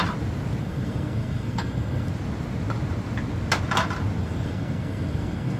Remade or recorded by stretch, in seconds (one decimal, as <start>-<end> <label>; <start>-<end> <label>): 0.0-0.6 recorded; 0.6-2.1 remade; 2.1-4.2 recorded; 4.2-5.6 remade